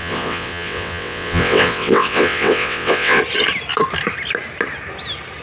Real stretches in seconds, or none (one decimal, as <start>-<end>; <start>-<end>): 3.2-5.4